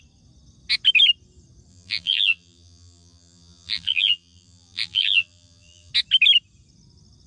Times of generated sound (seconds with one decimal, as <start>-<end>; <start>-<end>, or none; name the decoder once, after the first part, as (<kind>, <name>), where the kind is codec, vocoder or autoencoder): 1.7-5.9 (vocoder, BigVGAN v2)